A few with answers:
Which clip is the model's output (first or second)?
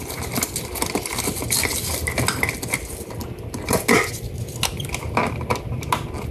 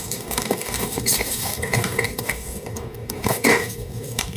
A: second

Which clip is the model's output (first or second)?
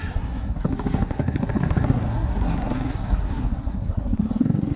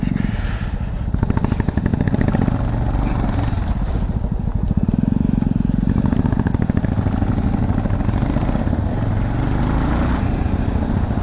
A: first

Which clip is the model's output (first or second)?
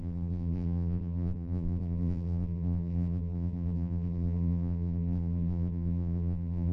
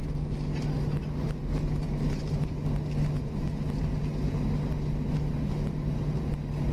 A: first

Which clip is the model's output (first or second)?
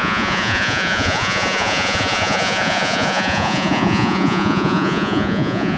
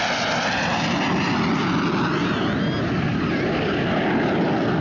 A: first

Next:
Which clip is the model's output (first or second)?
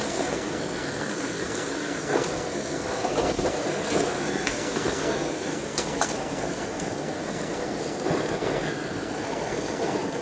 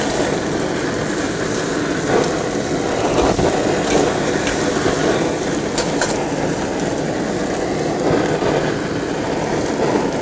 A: first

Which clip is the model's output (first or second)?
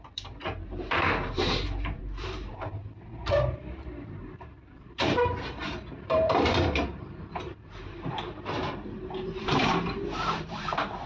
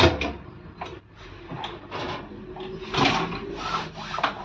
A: first